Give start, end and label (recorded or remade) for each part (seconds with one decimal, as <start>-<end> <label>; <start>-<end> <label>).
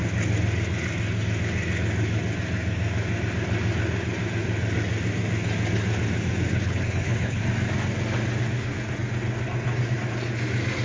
0.0-6.5 recorded; 6.5-7.4 remade; 7.4-10.8 recorded